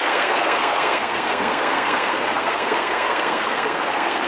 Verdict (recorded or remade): remade